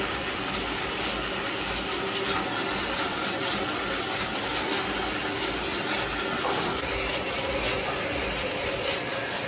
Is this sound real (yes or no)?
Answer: yes